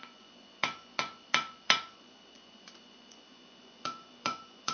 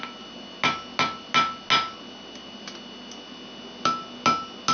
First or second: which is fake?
first